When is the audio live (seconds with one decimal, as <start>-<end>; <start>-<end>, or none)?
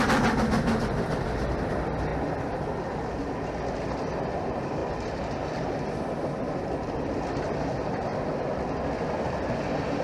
0.0-10.0